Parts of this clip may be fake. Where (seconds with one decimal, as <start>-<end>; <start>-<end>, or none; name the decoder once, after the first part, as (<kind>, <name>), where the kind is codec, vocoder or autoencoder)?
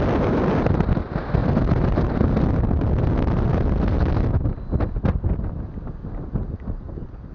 none